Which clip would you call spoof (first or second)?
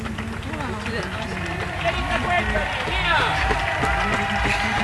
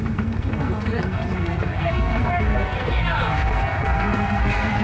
second